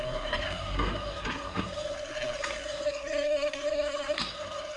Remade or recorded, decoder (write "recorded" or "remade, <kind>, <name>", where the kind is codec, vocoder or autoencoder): remade, codec, SNAC